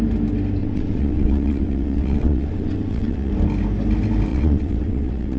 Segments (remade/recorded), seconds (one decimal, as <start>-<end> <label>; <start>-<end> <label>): 0.0-0.6 recorded; 0.6-3.3 remade; 3.3-4.3 recorded; 4.3-5.4 remade